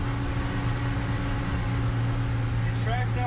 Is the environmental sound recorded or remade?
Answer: recorded